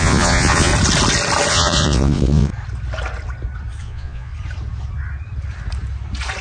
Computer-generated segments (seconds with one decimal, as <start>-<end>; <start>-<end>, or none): 0.0-0.7; 1.5-2.5; 3.8-4.3